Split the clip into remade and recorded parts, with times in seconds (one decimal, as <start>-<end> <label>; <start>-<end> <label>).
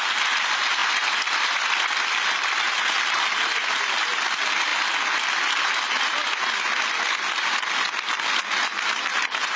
0.0-9.6 recorded